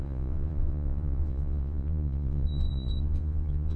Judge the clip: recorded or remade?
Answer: remade